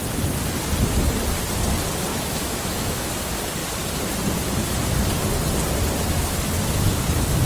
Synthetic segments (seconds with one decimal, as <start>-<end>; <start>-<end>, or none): 2.1-3.1